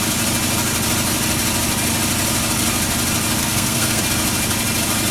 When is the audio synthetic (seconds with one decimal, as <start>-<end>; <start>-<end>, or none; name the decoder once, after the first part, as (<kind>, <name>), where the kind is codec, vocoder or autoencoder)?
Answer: 3.4-4.0 (codec, SNAC)